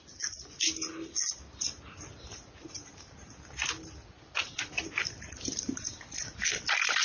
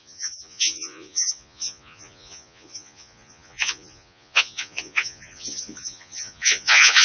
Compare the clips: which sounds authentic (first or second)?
first